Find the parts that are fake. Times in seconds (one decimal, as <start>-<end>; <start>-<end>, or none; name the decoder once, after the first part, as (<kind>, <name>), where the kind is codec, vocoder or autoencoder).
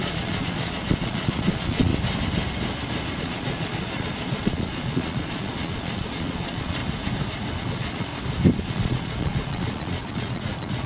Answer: 0.0-1.9 (vocoder, Vocos); 3.2-6.8; 7.6-8.1; 8.6-10.9